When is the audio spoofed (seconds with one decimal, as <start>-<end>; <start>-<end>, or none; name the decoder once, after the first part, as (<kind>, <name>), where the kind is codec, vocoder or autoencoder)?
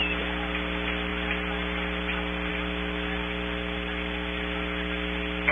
none